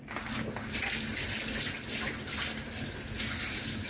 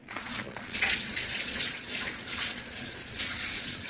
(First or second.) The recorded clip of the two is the first